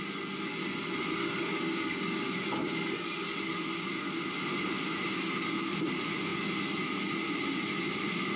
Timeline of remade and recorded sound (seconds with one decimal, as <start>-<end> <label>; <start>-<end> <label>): 0.0-1.2 recorded; 1.2-2.9 remade; 2.9-8.4 recorded